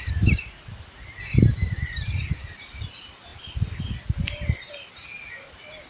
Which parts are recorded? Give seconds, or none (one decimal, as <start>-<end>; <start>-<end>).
0.0-5.9